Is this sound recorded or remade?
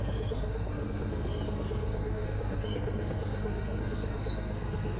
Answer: remade